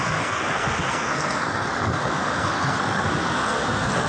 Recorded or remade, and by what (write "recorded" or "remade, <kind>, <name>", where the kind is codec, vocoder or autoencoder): remade, codec, SNAC